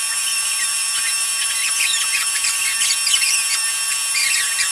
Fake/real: fake